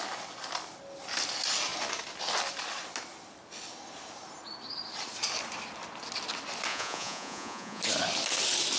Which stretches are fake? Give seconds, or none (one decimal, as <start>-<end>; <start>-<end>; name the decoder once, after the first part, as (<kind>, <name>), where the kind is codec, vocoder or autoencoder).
6.7-7.8 (vocoder, Vocos)